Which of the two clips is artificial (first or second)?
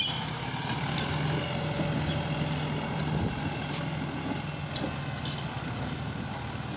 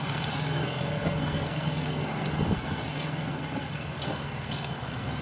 second